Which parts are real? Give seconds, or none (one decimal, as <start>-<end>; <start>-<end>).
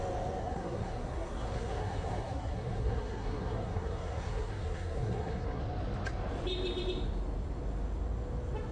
0.0-0.4; 5.6-8.7